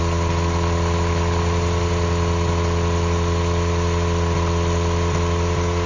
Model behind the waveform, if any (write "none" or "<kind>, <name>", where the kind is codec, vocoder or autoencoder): none